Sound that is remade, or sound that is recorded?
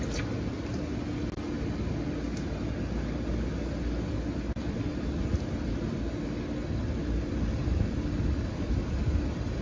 recorded